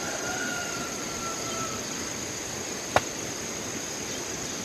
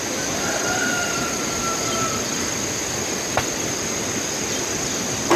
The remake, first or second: first